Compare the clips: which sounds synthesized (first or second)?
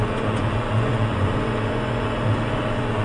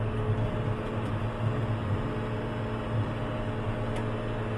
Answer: first